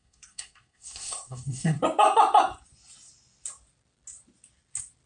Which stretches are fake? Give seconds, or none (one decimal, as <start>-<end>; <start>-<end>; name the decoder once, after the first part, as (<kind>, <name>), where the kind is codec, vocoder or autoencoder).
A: 0.0-1.8 (codec, SNAC)